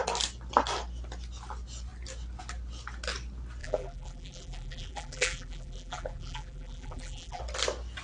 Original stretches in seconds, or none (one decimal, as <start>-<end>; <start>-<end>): 0.0-3.6; 7.4-8.0